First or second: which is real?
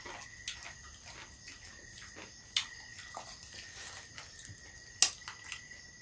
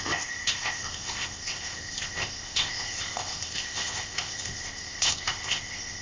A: first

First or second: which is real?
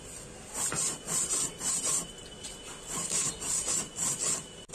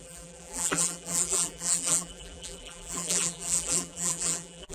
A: first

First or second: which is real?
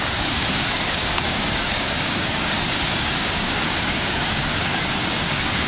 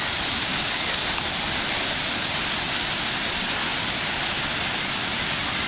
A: second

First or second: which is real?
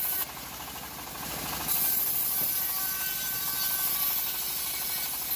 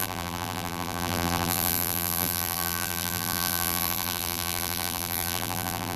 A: first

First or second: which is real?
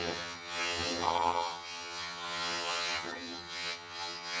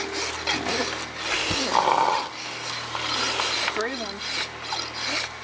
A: second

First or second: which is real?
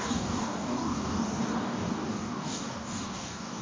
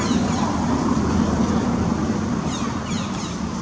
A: second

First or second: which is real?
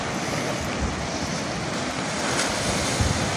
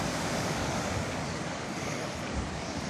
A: first